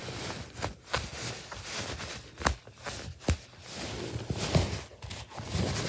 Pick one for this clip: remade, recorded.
recorded